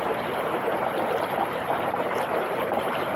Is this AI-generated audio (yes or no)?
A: yes